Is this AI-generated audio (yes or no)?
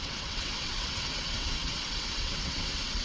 yes